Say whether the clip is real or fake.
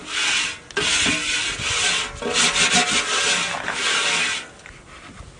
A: real